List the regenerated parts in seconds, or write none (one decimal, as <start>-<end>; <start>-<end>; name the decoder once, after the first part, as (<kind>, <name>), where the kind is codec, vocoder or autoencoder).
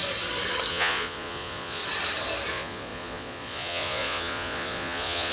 0.7-1.8 (vocoder, Vocos); 2.5-5.3